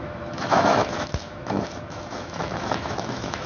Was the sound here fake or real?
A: fake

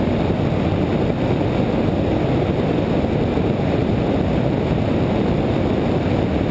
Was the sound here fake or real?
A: real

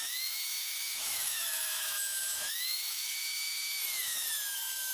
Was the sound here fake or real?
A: fake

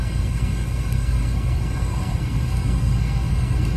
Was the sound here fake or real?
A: fake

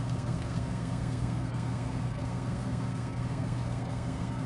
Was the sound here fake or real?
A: fake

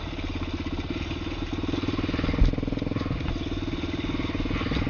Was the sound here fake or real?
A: real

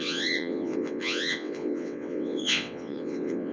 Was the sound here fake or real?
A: fake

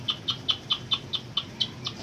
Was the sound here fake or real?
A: real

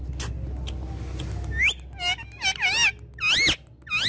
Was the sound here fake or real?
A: real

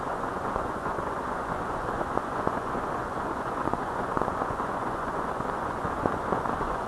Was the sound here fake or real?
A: fake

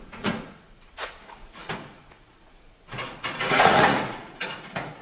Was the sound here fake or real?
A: fake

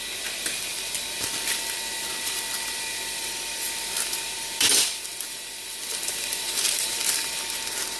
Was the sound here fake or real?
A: fake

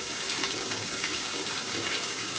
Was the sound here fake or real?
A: fake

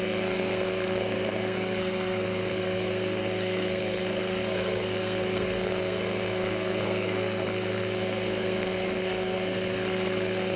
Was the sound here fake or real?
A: fake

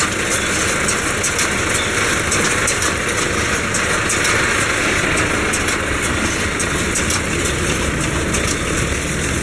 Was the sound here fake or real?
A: real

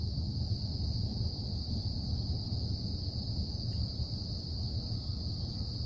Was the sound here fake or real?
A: real